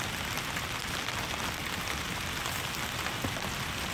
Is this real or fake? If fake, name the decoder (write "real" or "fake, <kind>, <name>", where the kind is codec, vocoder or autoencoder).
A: real